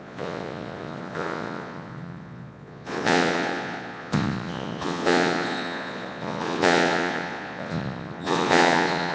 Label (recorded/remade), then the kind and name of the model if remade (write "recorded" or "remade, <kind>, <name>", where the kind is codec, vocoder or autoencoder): remade, vocoder, Vocos